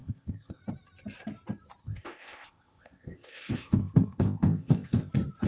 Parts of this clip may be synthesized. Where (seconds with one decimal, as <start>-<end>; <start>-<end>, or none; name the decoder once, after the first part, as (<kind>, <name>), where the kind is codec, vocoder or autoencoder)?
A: 0.0-0.6 (codec, ZipCodec); 1.8-5.1